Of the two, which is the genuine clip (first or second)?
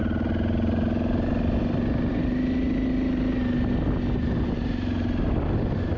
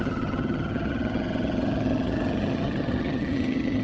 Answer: first